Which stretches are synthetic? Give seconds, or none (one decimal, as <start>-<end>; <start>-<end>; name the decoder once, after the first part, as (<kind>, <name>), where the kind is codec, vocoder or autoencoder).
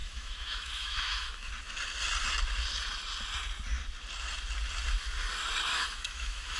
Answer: 0.0-1.5 (autoencoder, DAC-VAE); 5.7-6.6